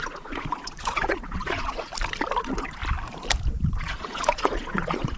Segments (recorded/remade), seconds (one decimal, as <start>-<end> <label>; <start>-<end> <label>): 0.0-1.9 remade; 1.9-2.4 recorded; 2.4-2.8 remade; 2.8-3.6 recorded; 3.6-5.2 remade